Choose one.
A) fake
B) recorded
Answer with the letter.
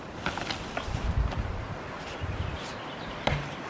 B